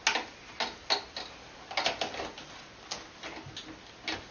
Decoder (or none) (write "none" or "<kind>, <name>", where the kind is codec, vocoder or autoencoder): none